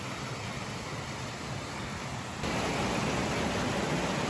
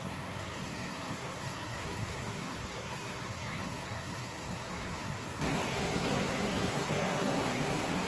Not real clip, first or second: second